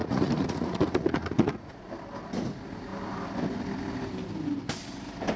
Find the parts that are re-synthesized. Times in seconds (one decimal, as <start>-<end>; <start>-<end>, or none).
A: 0.0-1.9